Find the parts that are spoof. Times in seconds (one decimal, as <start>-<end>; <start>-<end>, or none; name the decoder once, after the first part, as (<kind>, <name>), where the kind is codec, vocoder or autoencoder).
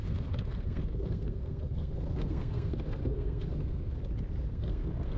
0.0-4.0 (codec, SNAC); 4.5-5.2